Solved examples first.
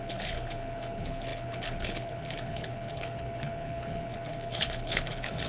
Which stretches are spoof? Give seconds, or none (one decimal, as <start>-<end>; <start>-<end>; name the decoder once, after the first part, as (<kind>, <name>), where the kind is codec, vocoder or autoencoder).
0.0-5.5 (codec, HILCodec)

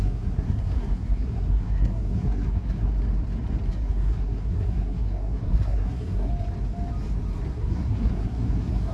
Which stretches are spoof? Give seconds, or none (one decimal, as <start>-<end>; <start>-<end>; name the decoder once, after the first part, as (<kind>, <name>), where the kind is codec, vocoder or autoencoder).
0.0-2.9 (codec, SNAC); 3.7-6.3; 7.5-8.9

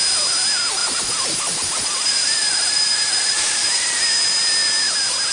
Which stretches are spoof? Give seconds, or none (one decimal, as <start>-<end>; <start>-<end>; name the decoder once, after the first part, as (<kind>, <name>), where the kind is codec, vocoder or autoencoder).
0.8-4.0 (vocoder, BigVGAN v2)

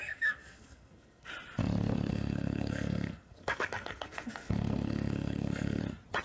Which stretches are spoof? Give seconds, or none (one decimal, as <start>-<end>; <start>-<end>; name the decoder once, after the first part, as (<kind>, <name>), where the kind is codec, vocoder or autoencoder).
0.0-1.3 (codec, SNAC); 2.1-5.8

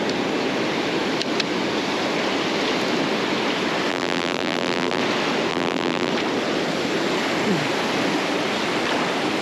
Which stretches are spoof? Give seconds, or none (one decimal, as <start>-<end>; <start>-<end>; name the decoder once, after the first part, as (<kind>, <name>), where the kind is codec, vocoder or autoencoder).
3.9-5.0 (vocoder, BigVGAN v2); 5.5-6.1

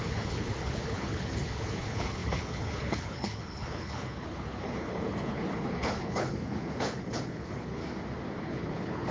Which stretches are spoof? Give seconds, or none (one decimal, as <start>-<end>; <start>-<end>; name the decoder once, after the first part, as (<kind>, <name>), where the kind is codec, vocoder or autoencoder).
0.0-7.8 (codec, HILCodec); 8.4-9.1